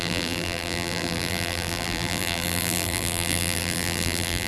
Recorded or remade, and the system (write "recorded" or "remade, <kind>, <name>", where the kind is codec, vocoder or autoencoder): remade, vocoder, BigVGAN v2